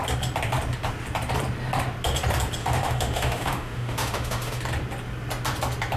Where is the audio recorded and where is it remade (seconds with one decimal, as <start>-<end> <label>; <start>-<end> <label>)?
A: 0.0-2.6 recorded; 2.6-4.6 remade; 4.6-6.0 recorded